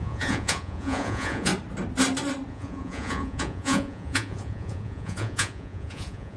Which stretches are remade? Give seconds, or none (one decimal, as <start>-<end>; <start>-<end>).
0.0-1.5; 2.5-6.4